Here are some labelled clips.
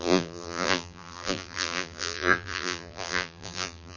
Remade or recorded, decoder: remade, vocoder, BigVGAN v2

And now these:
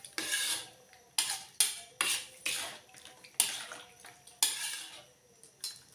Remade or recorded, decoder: recorded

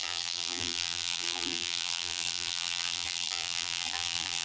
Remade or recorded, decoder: remade, vocoder, BigVGAN v2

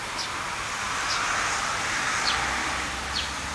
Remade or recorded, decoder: recorded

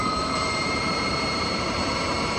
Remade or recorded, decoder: remade, vocoder, BigVGAN v2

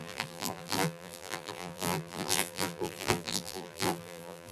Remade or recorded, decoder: remade, vocoder, BigVGAN v2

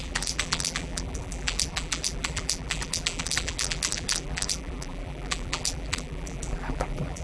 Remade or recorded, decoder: remade, vocoder, BigVGAN v2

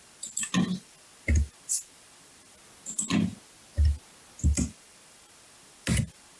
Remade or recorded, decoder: recorded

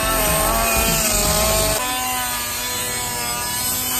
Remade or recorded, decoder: recorded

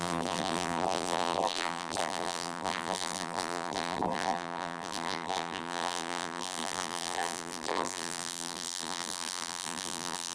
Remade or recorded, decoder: remade, vocoder, BigVGAN v2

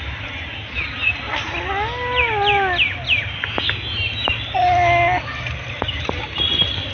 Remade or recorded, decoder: recorded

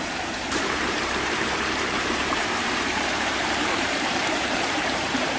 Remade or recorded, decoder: remade, vocoder, BigVGAN v2